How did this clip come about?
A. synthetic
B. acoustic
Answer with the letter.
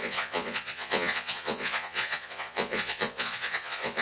A